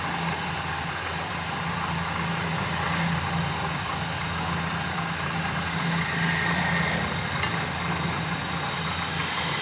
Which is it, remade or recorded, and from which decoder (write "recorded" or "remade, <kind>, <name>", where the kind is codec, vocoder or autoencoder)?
recorded